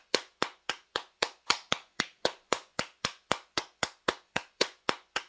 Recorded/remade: remade